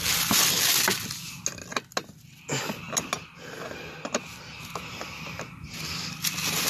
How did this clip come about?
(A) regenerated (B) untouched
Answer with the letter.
B